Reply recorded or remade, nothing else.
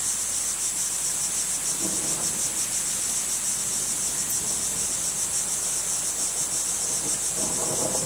recorded